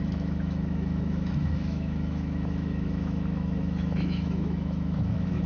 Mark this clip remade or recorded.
remade